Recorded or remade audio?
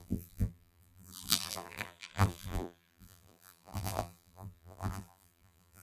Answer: remade